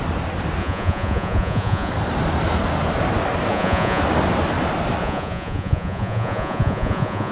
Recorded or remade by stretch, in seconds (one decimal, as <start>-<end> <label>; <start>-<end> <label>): 0.0-0.6 recorded; 0.6-1.9 remade; 1.9-3.5 recorded; 3.5-4.0 remade; 4.0-5.0 recorded; 5.0-7.3 remade